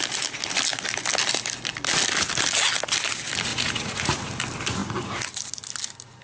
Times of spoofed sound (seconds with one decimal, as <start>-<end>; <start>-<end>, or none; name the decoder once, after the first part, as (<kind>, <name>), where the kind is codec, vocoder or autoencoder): 3.5-4.2 (vocoder, Vocos)